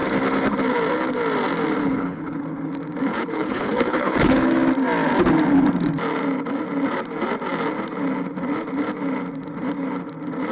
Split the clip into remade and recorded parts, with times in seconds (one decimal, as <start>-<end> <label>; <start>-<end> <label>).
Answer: 0.0-1.8 recorded; 1.8-2.4 remade; 2.4-3.1 recorded; 3.1-4.5 remade; 4.5-10.5 recorded